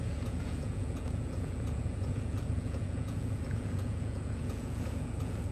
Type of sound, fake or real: fake